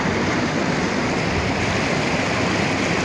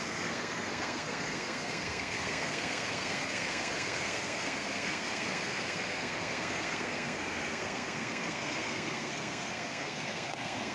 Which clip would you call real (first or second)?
first